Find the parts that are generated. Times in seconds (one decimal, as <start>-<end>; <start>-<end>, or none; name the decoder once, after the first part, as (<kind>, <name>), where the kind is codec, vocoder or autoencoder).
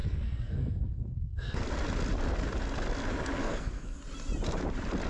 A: 0.0-1.6 (codec, SNAC); 3.4-4.0